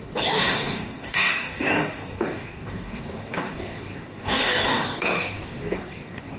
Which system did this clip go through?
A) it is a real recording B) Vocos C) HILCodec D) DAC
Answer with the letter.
D